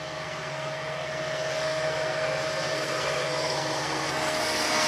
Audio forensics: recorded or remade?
remade